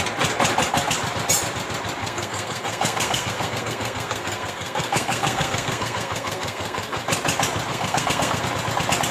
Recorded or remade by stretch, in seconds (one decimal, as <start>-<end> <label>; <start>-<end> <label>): 0.0-2.0 recorded; 2.0-7.0 remade; 7.0-7.7 recorded; 7.7-8.4 remade; 8.4-9.1 recorded